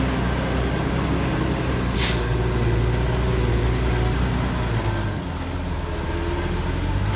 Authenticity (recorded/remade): recorded